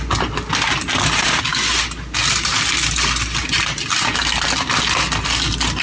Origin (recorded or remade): recorded